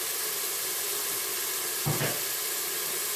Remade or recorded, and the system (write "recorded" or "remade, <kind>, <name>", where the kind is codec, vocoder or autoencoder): recorded